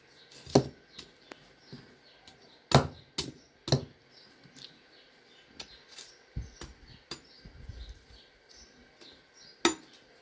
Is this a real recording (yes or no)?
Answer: yes